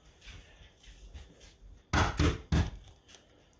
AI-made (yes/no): no